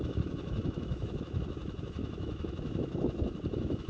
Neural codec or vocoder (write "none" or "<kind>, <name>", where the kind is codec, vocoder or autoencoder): autoencoder, DAC-VAE